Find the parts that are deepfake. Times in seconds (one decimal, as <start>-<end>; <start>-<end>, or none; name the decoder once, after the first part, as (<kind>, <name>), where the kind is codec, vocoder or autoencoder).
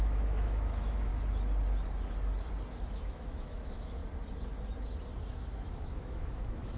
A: 0.0-1.1 (autoencoder, DAC-VAE); 2.8-4.0; 5.2-6.8